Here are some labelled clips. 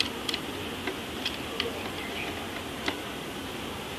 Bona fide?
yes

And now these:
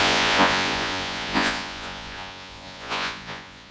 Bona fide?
no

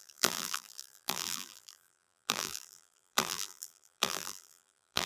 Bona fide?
no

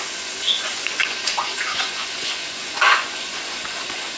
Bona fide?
no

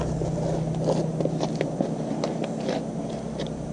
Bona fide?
yes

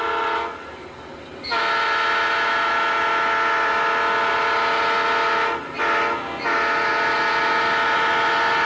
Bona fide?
yes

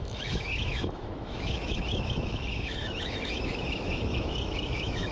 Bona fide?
no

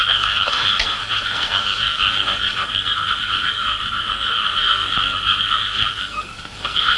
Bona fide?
no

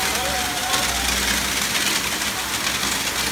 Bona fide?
yes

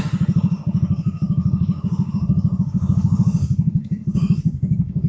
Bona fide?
no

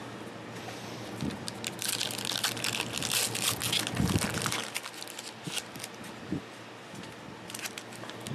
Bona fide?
yes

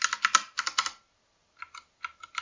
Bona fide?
yes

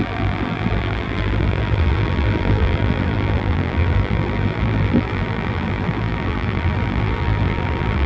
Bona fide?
no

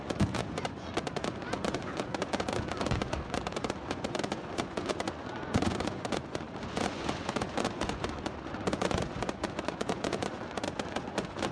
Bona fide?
no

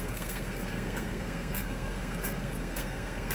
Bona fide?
no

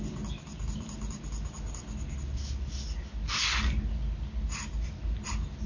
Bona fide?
yes